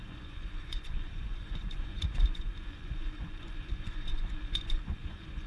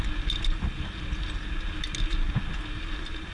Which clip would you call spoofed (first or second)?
first